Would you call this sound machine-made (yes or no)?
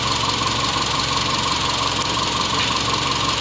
yes